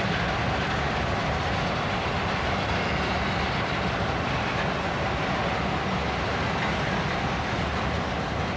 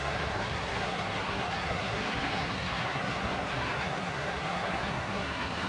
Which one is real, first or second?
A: first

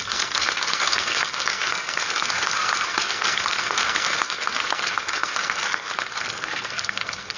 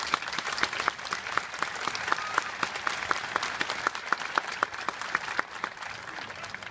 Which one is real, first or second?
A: second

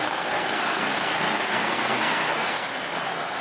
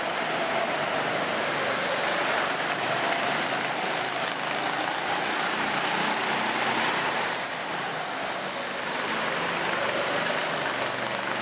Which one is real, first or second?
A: second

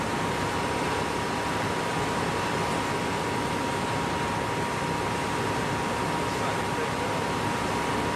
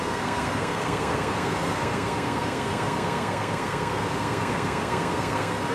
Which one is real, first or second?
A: first